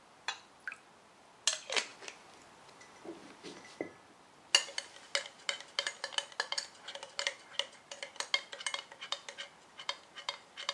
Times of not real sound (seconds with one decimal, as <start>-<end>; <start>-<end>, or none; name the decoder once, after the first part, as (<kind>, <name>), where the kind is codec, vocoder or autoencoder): none